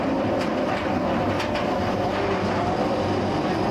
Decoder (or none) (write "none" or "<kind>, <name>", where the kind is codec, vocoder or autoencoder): none